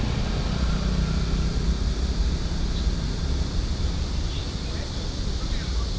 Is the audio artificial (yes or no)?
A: no